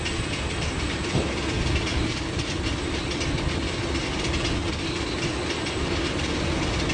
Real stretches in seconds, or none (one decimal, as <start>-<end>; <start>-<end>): 0.0-1.9; 3.2-4.6; 6.2-6.9